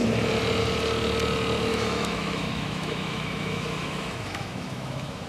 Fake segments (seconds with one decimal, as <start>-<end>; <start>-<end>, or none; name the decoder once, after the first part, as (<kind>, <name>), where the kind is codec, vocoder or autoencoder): 1.7-5.3 (autoencoder, DAC-VAE)